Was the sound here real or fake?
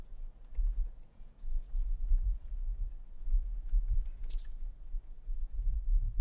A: fake